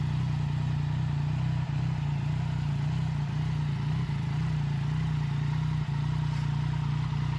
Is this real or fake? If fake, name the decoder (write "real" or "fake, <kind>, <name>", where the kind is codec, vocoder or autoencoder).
real